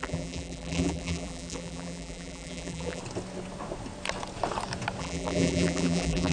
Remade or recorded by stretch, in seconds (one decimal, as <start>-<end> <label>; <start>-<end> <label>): 0.0-3.0 remade; 3.0-5.0 recorded; 5.0-6.3 remade